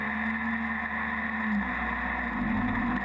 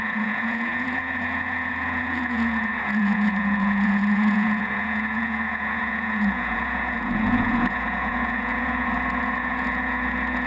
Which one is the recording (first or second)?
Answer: first